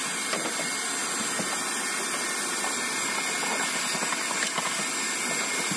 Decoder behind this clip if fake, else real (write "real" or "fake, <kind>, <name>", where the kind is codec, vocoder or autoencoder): real